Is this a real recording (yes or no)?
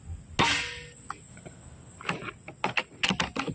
yes